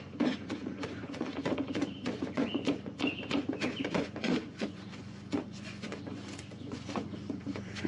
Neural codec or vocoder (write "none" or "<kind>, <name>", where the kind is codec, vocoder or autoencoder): vocoder, Vocos